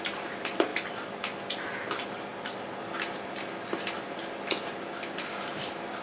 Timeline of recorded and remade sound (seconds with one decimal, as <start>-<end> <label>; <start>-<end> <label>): 0.0-6.0 recorded